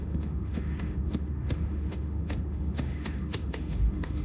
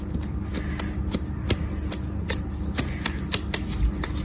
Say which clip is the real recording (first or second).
second